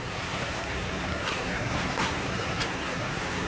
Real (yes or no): no